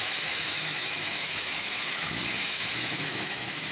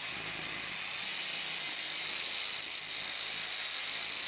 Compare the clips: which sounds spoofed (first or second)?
first